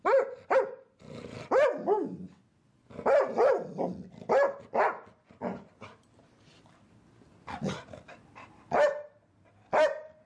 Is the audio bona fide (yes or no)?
yes